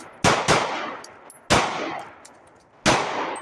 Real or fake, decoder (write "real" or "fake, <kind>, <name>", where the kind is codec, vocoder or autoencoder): real